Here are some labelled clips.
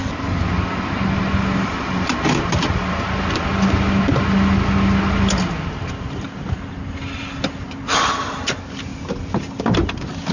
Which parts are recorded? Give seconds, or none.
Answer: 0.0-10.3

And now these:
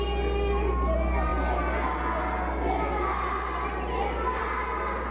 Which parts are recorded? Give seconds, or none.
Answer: 0.0-5.1

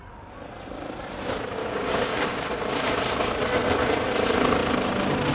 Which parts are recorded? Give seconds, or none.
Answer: 0.0-1.6; 2.5-5.3

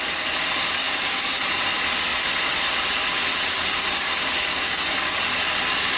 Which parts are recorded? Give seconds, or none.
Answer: 0.0-0.8; 1.4-3.8; 5.2-6.0

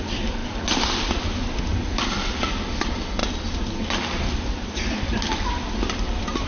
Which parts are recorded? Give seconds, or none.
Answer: 0.0-6.5